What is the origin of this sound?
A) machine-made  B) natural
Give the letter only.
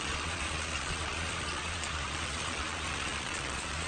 A